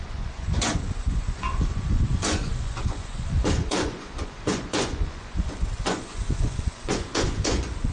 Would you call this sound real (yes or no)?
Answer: no